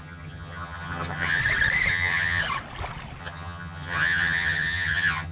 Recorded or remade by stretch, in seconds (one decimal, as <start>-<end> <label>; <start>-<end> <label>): 0.0-1.4 remade; 1.4-1.9 recorded; 1.9-2.4 remade; 2.4-3.2 recorded; 3.2-5.3 remade